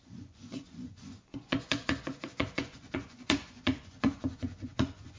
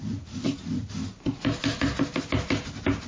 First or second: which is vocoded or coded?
first